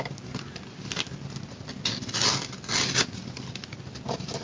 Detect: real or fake real